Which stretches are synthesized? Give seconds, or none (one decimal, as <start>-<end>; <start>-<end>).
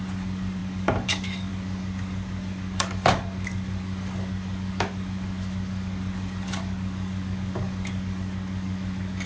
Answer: 0.0-9.3